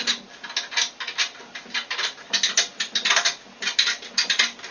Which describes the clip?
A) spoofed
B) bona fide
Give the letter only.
B